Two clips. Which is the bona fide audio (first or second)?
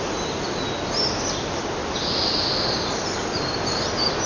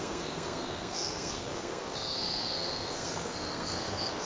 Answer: first